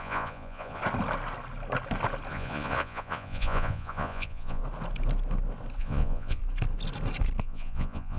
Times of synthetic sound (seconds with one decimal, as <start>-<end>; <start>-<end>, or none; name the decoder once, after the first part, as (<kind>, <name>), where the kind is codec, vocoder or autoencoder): 0.0-0.8 (vocoder, Vocos); 2.3-4.6; 5.8-6.4; 7.4-8.2